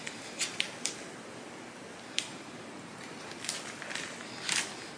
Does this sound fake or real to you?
real